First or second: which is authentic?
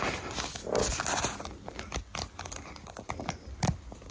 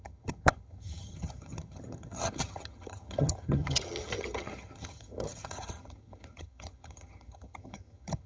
first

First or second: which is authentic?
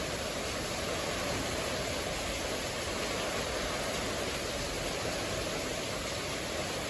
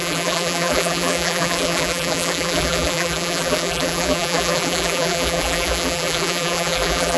first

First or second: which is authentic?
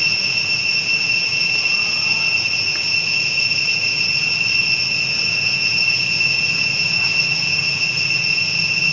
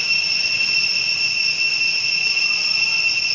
second